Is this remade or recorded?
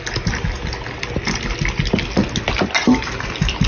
recorded